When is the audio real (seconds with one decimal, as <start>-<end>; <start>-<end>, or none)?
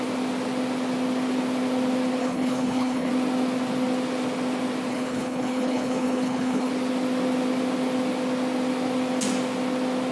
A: 0.0-2.2; 3.1-4.9; 6.7-10.1